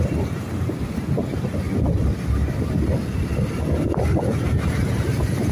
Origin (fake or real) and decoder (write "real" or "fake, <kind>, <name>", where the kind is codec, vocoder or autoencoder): real